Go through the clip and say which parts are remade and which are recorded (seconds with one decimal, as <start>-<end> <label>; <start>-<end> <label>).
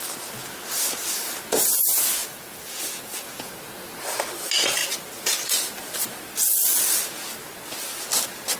0.0-2.2 recorded; 2.2-3.5 remade; 3.5-8.6 recorded